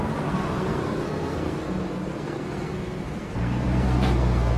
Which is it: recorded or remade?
remade